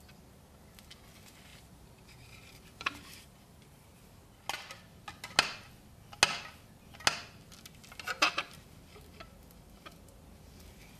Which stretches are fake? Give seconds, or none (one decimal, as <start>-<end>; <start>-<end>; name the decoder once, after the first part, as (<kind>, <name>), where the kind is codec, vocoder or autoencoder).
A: 1.5-4.0 (vocoder, BigVGAN v2)